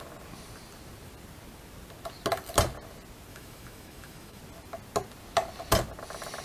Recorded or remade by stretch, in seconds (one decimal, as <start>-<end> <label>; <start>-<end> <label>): 0.0-3.3 recorded; 3.3-4.4 remade; 4.4-6.4 recorded